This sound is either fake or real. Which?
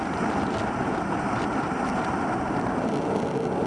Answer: real